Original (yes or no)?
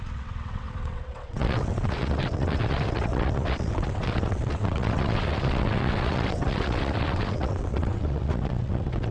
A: no